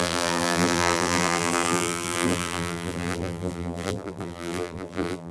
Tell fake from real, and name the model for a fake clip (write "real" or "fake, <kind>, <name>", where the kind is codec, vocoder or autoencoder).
fake, vocoder, BigVGAN v2